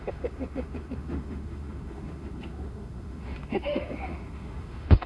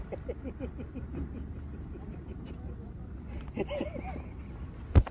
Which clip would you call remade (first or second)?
first